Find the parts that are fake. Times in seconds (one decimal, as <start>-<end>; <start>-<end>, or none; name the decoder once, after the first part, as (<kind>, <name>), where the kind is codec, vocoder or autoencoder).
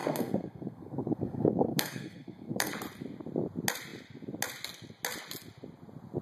0.0-2.7 (codec, SNAC)